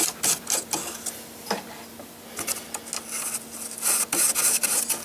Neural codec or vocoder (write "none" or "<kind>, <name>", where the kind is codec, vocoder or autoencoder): none